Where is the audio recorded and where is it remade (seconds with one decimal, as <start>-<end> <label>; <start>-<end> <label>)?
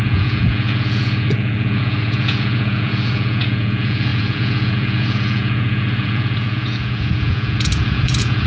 0.0-8.5 remade